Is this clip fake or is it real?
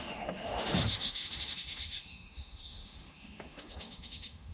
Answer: fake